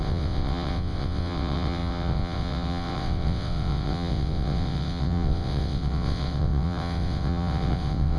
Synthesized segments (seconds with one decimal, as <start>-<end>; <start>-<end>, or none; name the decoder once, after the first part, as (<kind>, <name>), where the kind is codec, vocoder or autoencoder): 0.0-8.2 (vocoder, WaveNeXt)

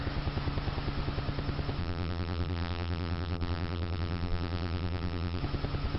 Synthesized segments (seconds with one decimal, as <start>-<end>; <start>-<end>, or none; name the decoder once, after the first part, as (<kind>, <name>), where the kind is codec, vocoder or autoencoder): 1.8-5.4 (vocoder, BigVGAN v2)

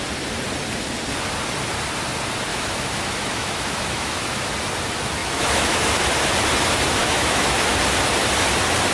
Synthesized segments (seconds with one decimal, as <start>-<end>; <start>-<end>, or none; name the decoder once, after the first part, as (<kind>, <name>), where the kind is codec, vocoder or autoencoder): 2.5-4.5 (autoencoder, DAC-VAE); 5.2-5.9; 7.0-7.7

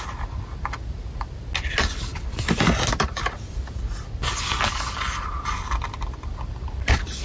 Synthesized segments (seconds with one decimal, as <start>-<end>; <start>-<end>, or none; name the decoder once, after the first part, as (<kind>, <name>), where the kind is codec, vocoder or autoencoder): none

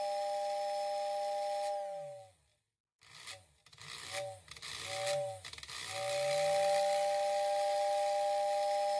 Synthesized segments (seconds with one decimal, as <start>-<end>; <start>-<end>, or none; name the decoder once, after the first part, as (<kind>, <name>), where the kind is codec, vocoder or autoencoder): none